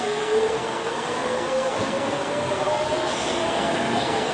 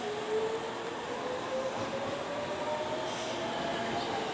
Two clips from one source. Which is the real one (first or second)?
second